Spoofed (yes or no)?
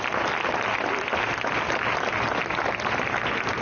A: no